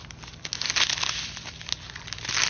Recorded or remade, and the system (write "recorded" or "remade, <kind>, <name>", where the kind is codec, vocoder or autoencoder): recorded